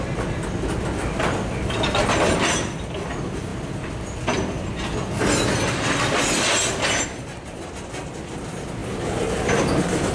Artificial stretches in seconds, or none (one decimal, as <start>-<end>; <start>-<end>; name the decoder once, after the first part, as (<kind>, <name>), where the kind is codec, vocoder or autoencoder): none